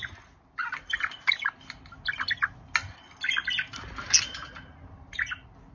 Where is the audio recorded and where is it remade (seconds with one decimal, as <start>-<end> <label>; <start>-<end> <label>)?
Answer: 0.0-5.7 recorded